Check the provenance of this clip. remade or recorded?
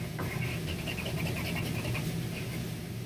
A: recorded